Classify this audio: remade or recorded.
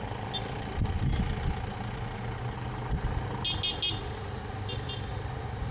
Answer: recorded